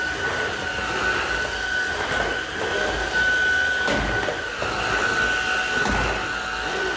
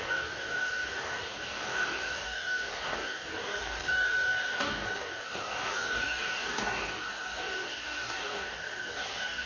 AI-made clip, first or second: second